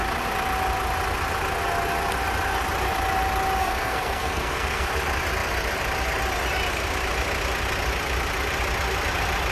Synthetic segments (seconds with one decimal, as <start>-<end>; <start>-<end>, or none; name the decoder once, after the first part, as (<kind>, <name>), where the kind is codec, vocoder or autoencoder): 3.6-4.9 (codec, SNAC)